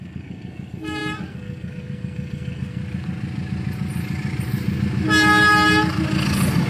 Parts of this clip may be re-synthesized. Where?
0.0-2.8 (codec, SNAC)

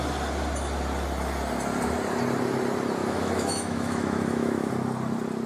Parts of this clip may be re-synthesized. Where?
3.0-4.7 (autoencoder, DAC-VAE)

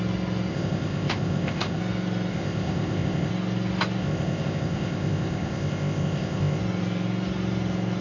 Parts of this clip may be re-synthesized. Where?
0.5-1.8 (codec, ZipCodec); 2.3-3.3; 4.0-6.6

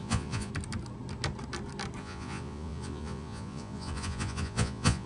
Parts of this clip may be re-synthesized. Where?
0.0-0.5 (vocoder, Vocos); 2.0-5.1

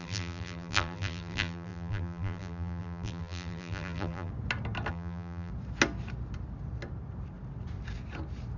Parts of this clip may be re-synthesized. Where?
0.0-4.3 (vocoder, BigVGAN v2); 4.9-5.5

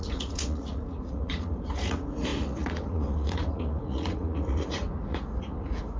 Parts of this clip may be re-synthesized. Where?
0.0-6.0 (vocoder, Vocos)

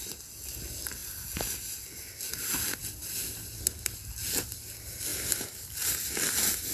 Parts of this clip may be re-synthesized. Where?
5.1-5.9 (vocoder, BigVGAN v2)